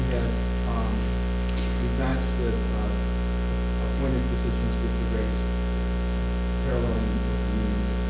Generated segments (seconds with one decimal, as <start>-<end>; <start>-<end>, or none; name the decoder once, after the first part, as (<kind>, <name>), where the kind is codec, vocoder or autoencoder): none